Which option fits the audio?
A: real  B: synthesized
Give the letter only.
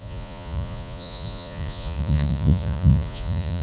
B